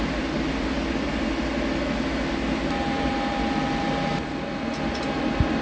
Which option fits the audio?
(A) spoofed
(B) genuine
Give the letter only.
B